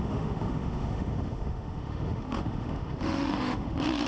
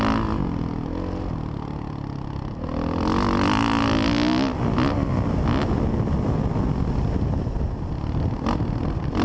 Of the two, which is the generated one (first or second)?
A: first